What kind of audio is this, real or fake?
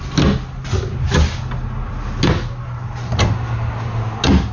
real